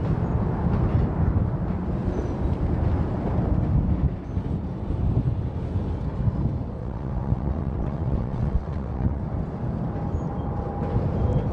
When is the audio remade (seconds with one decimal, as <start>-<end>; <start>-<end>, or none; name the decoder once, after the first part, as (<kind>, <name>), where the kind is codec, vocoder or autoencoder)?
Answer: 6.8-9.2 (vocoder, WaveNeXt)